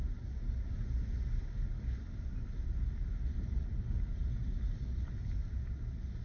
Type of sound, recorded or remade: recorded